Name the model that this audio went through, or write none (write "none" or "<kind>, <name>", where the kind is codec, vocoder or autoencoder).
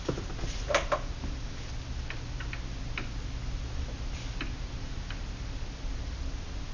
none